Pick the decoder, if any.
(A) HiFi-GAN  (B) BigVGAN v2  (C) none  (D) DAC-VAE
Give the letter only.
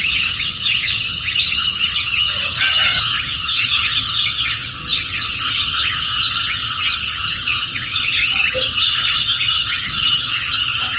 A